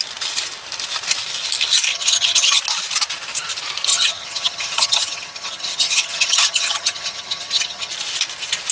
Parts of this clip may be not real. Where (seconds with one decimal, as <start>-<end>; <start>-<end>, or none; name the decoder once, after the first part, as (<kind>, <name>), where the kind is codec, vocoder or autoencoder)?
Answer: 1.9-2.6 (vocoder, HiFi-GAN); 3.9-7.9

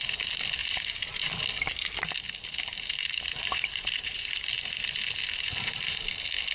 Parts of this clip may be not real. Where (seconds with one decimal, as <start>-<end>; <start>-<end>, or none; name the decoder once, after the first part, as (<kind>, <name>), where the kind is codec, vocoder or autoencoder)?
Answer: 0.6-1.3 (vocoder, BigVGAN v2); 2.7-6.0

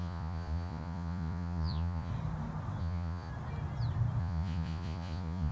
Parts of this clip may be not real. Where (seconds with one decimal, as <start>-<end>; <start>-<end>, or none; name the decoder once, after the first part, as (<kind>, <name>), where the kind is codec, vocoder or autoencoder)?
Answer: 0.0-2.1 (vocoder, Vocos); 2.8-3.3; 4.2-5.5

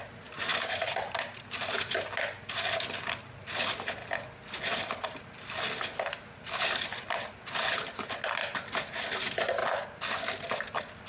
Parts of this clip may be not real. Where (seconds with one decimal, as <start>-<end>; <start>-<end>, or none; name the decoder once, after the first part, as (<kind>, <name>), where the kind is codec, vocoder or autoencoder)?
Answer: 0.5-1.5 (vocoder, BigVGAN v2)